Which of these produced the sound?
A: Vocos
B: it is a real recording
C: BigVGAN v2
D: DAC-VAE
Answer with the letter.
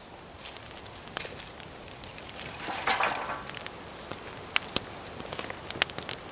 B